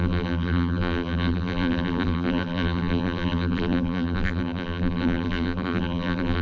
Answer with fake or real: fake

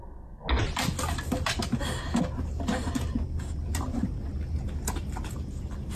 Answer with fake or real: real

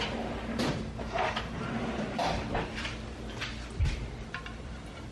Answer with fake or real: fake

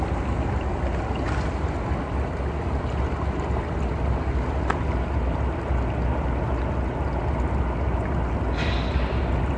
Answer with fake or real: real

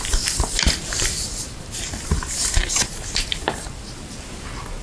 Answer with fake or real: fake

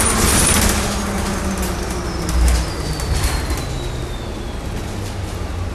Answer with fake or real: real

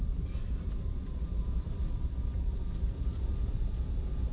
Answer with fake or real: fake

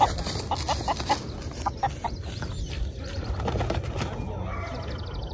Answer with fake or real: real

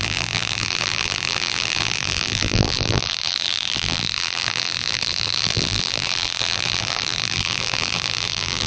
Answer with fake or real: fake